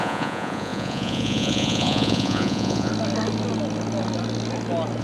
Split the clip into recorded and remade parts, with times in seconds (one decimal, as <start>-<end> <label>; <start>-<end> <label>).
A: 0.0-2.9 remade; 2.9-5.0 recorded